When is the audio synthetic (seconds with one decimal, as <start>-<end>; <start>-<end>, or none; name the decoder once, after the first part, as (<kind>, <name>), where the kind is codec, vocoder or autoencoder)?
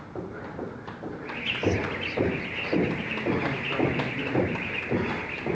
none